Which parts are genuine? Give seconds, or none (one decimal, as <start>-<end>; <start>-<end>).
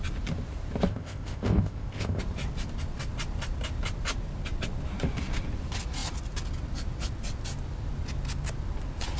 0.0-0.9; 2.2-9.2